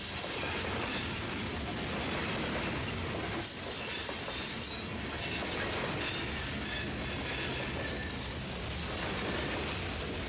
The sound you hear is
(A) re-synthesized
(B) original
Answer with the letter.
B